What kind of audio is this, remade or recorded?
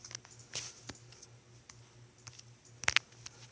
recorded